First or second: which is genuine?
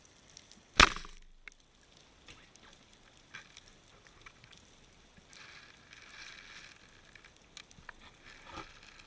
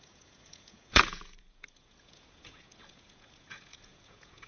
first